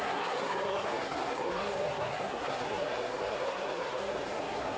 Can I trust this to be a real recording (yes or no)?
no